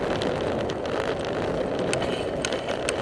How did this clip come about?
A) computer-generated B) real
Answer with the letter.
B